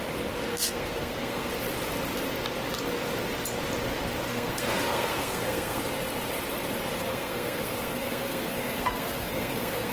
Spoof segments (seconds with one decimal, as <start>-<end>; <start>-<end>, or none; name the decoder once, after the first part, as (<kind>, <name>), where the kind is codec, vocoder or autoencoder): 0.5-1.5 (codec, SNAC); 4.3-5.8; 7.1-9.9